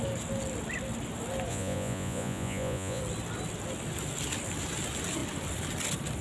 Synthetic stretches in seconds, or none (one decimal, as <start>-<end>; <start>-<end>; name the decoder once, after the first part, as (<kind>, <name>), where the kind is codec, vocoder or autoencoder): 1.5-3.0 (vocoder, Vocos)